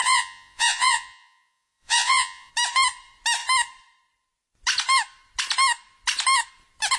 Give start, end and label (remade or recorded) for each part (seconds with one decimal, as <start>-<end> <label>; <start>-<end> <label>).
0.0-2.5 remade; 2.5-7.0 recorded